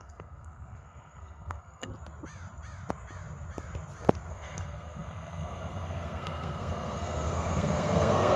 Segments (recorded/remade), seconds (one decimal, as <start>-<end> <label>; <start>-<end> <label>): 0.0-1.9 remade; 1.9-4.3 recorded; 4.3-8.4 remade